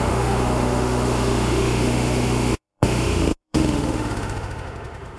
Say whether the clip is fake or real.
fake